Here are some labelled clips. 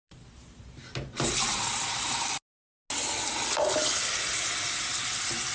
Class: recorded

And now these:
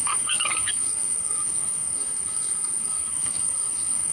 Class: remade